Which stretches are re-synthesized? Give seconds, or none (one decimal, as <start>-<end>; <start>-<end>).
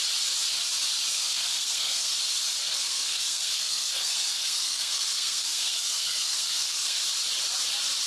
1.1-2.1; 2.6-7.0